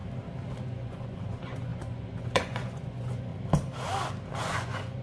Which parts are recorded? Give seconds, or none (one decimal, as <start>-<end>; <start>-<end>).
0.0-0.6; 3.3-4.4